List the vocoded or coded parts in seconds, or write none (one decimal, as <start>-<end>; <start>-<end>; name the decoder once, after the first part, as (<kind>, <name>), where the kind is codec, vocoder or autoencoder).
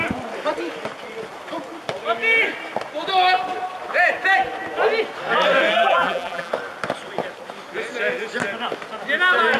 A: 5.7-6.5 (vocoder, BigVGAN v2)